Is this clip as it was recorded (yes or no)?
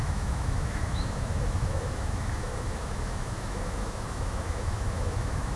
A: no